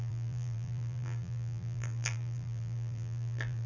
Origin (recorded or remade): remade